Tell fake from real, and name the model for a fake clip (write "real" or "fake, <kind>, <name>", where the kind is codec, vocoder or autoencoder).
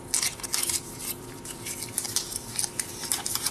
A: fake, vocoder, BigVGAN v2